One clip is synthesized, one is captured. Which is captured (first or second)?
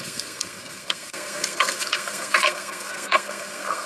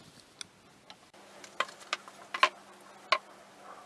second